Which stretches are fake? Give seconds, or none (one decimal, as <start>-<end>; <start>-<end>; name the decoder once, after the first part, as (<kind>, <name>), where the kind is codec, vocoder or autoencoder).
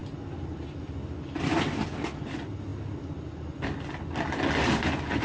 none